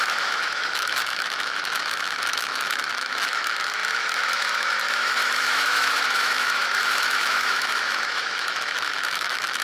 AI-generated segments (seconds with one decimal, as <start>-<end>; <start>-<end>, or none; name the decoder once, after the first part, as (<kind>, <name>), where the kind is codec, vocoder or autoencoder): 0.0-9.6 (autoencoder, DAC-VAE)